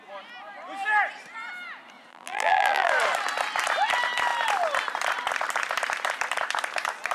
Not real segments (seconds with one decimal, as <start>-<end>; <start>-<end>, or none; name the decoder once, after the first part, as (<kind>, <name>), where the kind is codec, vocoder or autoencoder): 2.1-2.9 (vocoder, BigVGAN v2)